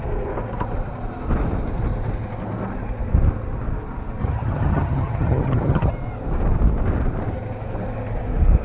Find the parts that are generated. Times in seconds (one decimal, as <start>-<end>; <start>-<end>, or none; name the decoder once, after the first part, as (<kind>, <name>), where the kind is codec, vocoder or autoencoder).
4.2-5.9 (vocoder, HiFi-GAN)